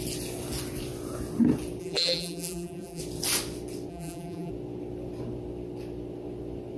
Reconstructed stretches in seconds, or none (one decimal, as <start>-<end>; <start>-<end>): 1.8-3.0; 3.9-4.5